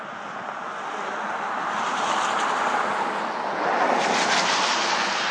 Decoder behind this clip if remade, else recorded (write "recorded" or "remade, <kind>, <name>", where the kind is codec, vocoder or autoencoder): recorded